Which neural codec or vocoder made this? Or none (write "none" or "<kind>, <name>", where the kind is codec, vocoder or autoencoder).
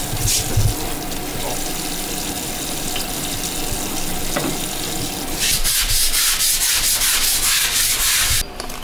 none